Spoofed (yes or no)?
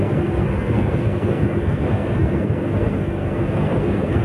yes